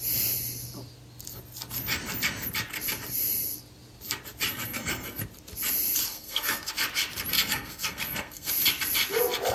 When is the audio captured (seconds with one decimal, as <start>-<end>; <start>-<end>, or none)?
0.0-4.5; 5.2-6.1; 6.7-7.3; 8.5-9.5